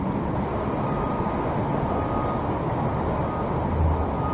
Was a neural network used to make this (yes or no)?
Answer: no